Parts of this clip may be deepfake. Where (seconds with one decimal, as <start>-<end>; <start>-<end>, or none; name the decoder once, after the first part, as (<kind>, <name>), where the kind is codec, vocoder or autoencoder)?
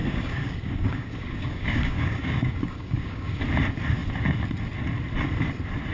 0.0-3.4 (codec, DAC)